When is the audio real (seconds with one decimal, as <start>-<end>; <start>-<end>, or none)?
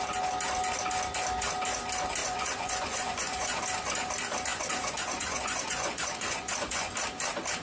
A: 0.0-2.2; 3.6-4.5; 6.9-7.6